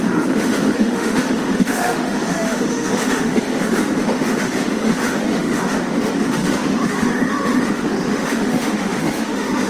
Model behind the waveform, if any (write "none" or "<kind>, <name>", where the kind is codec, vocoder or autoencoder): autoencoder, DAC-VAE